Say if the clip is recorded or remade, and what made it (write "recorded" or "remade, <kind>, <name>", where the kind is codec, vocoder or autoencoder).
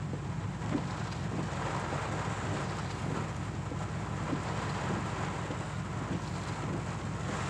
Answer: recorded